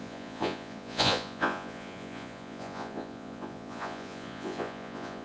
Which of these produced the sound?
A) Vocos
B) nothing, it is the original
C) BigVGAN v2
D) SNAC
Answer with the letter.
A